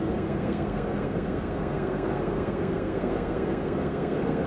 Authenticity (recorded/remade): remade